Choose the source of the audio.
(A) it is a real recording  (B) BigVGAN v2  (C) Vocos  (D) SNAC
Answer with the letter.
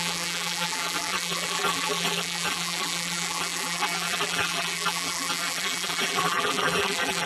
B